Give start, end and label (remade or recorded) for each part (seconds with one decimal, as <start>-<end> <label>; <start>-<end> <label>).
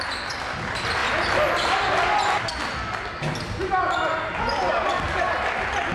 0.0-5.9 recorded